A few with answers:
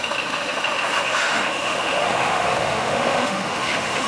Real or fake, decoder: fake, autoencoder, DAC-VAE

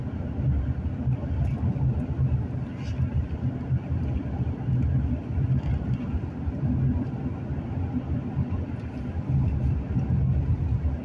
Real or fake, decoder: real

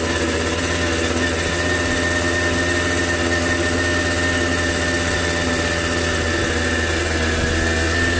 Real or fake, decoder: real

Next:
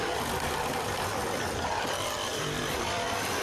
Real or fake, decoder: real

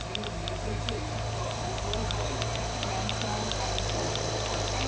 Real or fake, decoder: real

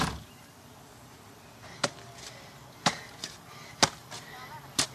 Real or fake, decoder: real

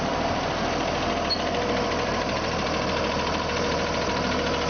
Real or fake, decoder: real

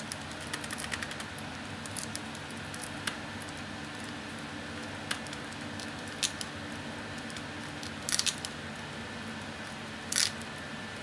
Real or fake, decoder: real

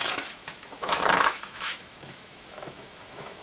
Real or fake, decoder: fake, autoencoder, DAC-VAE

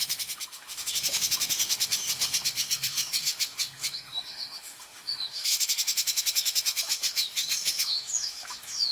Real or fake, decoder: fake, autoencoder, DAC-VAE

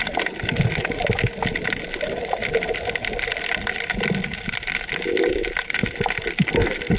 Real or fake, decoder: real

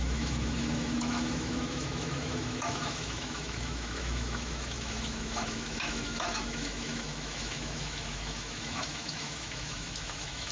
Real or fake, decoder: fake, autoencoder, DAC-VAE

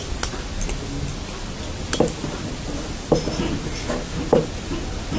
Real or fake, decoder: real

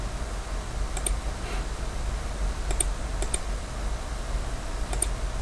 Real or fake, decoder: real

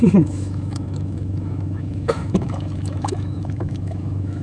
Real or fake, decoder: fake, autoencoder, DAC-VAE